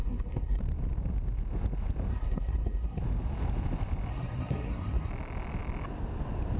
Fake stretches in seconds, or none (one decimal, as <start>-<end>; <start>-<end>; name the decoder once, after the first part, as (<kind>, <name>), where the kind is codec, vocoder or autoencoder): 0.0-0.6 (codec, SNAC); 2.1-3.0; 4.1-5.1

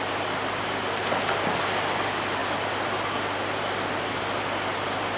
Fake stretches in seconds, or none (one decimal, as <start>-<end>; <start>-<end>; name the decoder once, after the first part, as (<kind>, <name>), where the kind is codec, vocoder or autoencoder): none

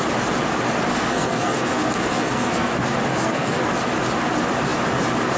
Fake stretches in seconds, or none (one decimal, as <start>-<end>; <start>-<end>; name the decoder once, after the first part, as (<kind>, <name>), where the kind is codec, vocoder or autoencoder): 0.9-2.7 (codec, SNAC); 3.1-3.7

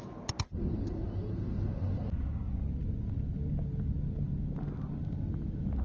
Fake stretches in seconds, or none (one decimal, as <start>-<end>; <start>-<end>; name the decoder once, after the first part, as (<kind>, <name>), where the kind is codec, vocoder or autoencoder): none

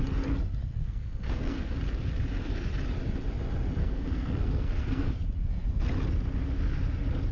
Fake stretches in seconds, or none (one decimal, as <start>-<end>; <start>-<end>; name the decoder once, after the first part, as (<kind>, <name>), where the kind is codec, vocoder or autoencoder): 0.8-1.8 (codec, SNAC); 3.8-5.1

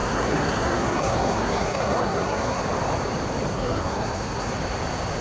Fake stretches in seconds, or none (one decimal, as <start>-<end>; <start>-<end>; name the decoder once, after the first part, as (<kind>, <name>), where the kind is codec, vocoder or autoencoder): 0.0-2.6 (codec, SNAC); 3.5-4.5